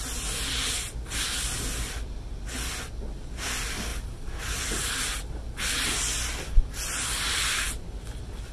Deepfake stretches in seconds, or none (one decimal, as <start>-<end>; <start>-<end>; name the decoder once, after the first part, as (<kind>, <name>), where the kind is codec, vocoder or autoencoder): none